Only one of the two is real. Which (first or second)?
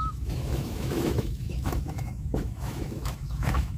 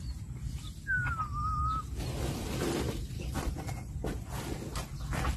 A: second